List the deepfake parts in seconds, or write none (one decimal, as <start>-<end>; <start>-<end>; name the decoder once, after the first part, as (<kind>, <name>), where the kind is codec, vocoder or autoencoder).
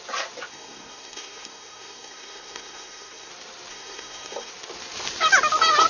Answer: 0.5-3.3 (codec, SNAC); 3.7-4.5